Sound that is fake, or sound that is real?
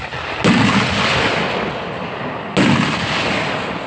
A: real